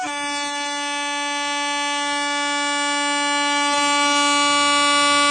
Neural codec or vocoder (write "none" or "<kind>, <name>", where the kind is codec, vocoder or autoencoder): none